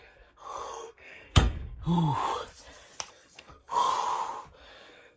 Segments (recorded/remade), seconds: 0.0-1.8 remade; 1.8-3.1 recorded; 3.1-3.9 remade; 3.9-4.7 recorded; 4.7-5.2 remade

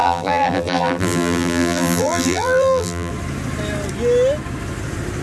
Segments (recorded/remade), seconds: 0.0-3.1 remade; 3.1-5.2 recorded

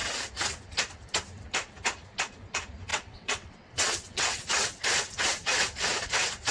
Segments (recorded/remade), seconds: 0.0-2.9 recorded; 2.9-4.5 remade; 4.5-6.5 recorded

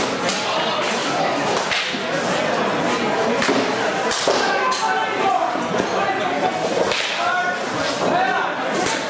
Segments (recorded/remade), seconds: 0.0-1.0 recorded; 1.0-1.5 remade; 1.5-9.1 recorded

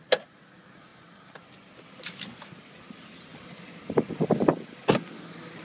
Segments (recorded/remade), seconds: 0.0-5.6 recorded

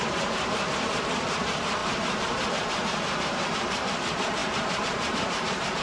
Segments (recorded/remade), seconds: 0.0-5.8 remade

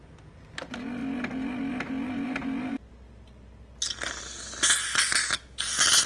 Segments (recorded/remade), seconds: 0.0-6.1 recorded

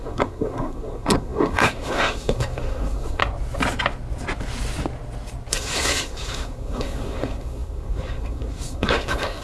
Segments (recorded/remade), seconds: 0.0-3.2 remade; 3.2-5.5 recorded; 5.5-9.4 remade